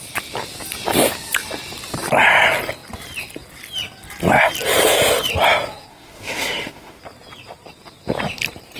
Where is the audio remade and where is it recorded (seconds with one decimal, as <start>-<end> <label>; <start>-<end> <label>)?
0.0-5.9 recorded; 5.9-7.0 remade; 7.0-8.8 recorded